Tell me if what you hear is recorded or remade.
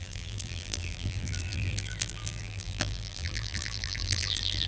remade